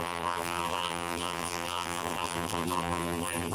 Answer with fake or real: fake